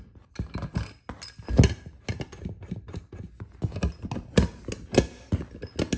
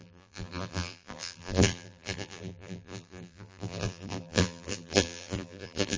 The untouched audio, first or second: first